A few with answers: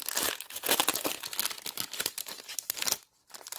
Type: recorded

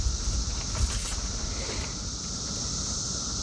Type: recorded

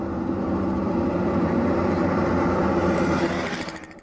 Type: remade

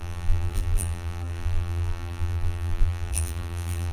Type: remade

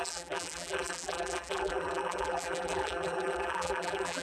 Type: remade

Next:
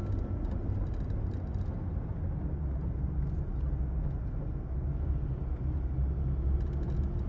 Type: recorded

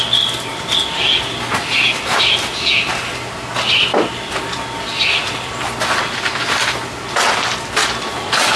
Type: recorded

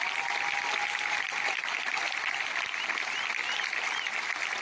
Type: recorded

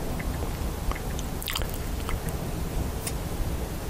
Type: recorded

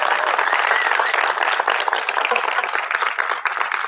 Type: recorded